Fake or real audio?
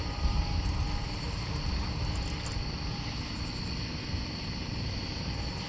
real